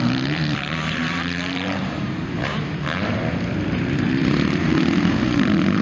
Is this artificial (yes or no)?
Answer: yes